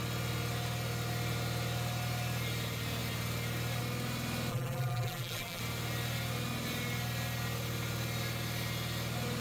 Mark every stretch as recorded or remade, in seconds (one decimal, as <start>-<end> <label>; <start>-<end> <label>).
0.0-4.5 recorded; 4.5-5.6 remade; 5.6-9.4 recorded